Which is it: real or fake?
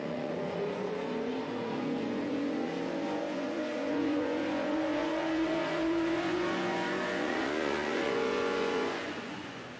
fake